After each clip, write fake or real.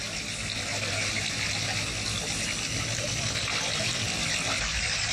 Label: real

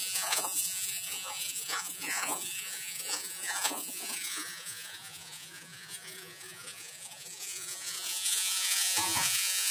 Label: fake